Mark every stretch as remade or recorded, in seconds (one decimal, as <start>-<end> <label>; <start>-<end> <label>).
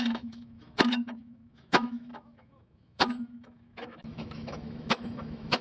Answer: 0.0-5.6 remade